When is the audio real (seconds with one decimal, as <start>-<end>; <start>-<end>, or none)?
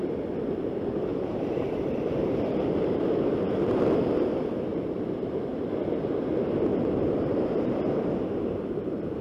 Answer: 0.0-1.1; 3.8-4.7; 5.7-6.7